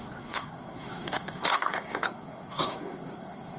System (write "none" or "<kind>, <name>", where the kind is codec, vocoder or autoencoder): codec, SNAC